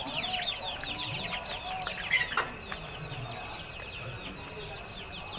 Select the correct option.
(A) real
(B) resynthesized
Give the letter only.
A